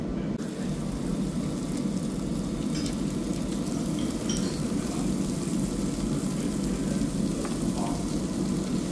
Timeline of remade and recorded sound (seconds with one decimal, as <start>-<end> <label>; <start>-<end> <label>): 0.0-3.3 recorded; 3.3-5.2 remade; 5.2-8.9 recorded